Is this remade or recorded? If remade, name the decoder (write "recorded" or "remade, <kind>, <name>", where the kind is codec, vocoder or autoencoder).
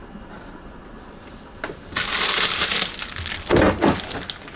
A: recorded